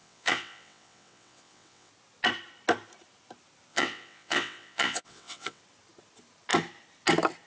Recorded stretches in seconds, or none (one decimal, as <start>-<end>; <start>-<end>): 1.9-3.7; 5.6-7.5